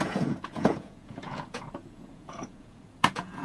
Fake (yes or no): yes